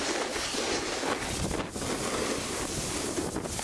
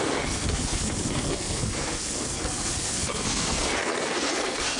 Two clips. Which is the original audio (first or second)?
first